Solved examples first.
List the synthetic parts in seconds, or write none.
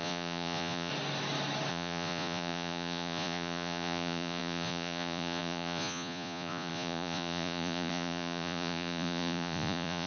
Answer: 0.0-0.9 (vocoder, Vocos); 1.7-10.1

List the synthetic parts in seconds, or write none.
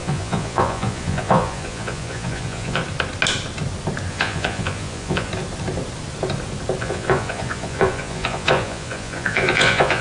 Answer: 0.0-2.8 (vocoder, Vocos); 4.1-5.3; 6.8-10.0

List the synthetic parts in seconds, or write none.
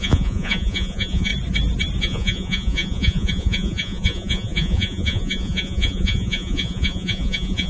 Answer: 0.0-1.3 (vocoder, Vocos); 2.0-7.7